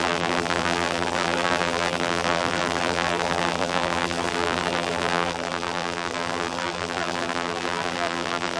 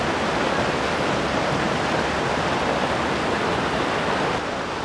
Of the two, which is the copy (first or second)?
first